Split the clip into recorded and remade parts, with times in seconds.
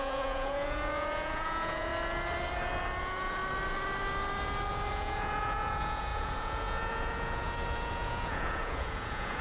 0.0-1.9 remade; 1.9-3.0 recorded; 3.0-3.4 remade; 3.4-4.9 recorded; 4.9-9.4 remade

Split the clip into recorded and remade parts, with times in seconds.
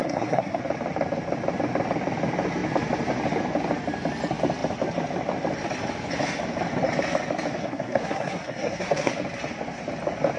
0.0-0.6 remade; 0.6-7.6 recorded; 7.6-9.1 remade; 9.1-10.4 recorded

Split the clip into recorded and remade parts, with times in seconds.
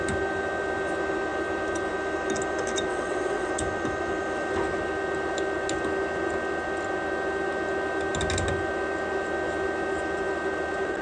0.0-2.9 recorded; 2.9-3.5 remade; 3.5-11.0 recorded